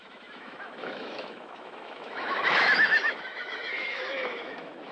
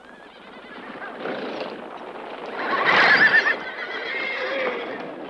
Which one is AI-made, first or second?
first